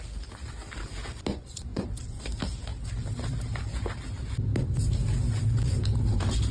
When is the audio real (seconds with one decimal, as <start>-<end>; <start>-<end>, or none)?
0.0-1.3; 2.2-6.5